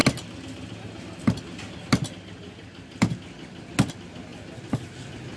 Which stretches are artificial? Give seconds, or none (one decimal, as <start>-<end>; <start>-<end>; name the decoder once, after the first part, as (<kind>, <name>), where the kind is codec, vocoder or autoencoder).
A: none